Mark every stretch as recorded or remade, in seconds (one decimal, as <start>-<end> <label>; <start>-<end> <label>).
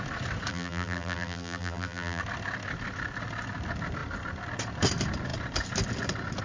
0.0-0.5 recorded; 0.5-2.2 remade; 2.2-6.4 recorded